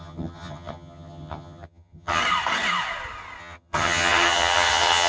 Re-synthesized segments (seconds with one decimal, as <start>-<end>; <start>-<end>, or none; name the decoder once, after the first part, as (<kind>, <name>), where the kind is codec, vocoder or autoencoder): 0.0-2.2 (vocoder, HiFi-GAN); 3.4-5.1